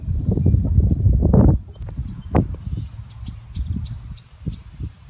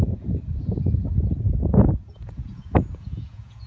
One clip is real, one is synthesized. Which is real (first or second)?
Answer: first